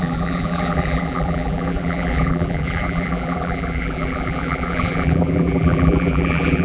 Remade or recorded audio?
remade